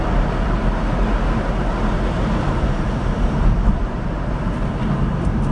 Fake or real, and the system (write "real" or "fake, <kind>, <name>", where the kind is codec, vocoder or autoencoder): fake, vocoder, BigVGAN v2